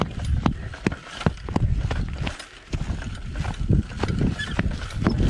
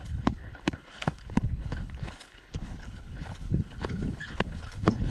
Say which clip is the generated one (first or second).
second